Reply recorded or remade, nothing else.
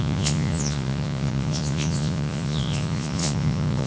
remade